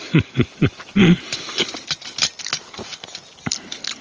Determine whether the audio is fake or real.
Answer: real